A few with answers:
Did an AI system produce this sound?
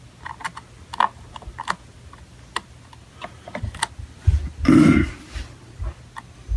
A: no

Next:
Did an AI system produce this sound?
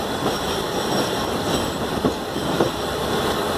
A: no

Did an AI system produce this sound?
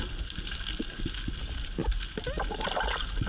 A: no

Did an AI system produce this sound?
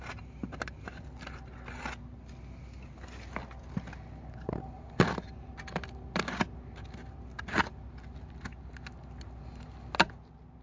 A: no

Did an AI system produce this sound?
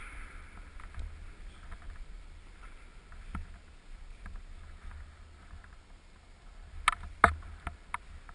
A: no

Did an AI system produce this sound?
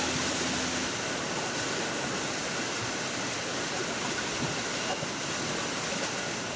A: no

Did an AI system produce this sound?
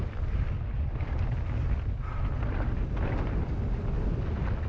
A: no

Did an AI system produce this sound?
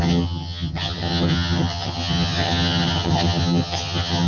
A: yes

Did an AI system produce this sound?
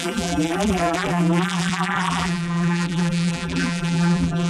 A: yes